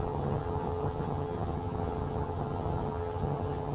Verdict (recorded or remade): remade